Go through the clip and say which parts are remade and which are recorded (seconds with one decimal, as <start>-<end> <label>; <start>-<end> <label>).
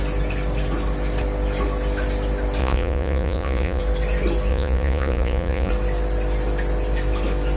0.0-2.6 recorded; 2.6-3.8 remade; 3.8-4.5 recorded; 4.5-5.7 remade; 5.7-7.6 recorded